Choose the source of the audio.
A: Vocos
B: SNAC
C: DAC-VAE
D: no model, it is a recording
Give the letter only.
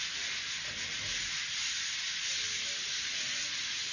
D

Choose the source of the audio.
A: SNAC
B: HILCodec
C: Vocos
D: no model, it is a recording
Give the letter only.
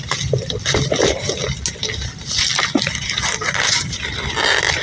D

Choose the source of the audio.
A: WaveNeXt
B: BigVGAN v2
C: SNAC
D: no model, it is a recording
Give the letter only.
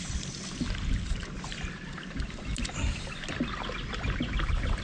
D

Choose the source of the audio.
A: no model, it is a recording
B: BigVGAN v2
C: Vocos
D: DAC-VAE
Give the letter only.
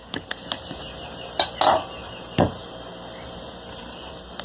A